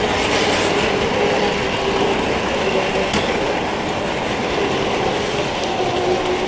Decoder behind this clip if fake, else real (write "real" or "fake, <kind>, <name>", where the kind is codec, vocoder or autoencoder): real